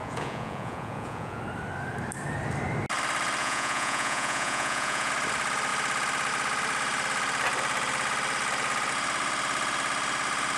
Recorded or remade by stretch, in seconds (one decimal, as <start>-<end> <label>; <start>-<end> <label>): 0.0-1.4 remade; 1.4-3.4 recorded; 3.4-5.1 remade; 5.1-10.6 recorded